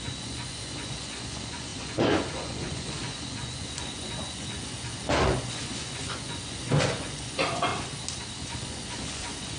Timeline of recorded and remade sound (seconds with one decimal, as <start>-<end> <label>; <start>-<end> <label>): 0.0-7.7 remade; 7.7-8.4 recorded; 8.4-9.6 remade